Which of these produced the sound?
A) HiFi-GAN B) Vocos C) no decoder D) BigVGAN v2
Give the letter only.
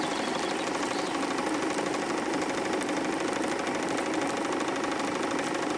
C